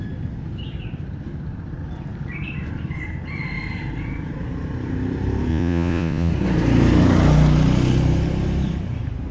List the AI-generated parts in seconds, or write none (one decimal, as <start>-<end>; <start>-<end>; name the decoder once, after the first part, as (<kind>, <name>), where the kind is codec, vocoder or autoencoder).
5.5-6.3 (vocoder, Vocos)